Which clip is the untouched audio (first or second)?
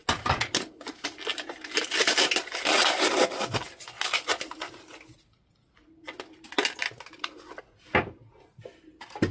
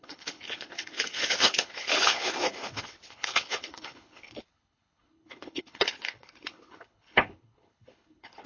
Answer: first